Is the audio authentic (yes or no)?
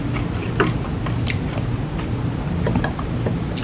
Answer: yes